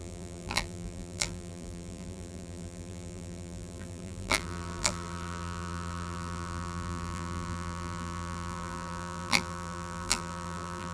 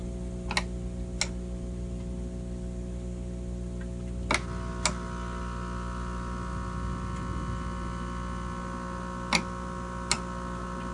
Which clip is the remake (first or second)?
first